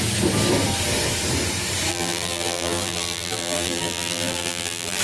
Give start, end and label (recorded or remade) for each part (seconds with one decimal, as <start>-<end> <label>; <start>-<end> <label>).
0.0-1.9 recorded; 1.9-5.0 remade